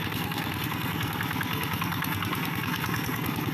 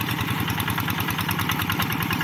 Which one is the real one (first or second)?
second